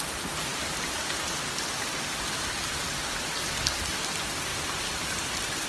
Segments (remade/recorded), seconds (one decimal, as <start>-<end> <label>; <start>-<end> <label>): 0.0-5.7 recorded